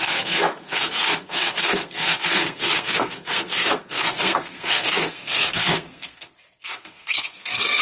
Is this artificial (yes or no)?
yes